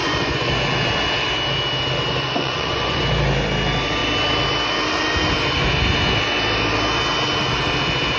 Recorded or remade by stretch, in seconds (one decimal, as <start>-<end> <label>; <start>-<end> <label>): 0.0-0.6 remade; 0.6-2.1 recorded; 2.1-3.0 remade; 3.0-8.2 recorded